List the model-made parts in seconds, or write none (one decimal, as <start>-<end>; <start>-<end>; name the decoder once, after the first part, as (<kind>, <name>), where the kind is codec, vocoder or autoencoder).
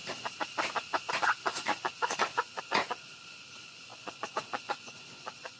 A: 1.1-5.6 (vocoder, Vocos)